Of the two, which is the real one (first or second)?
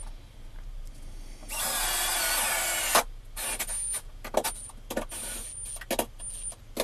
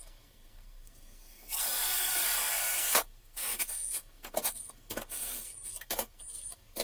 first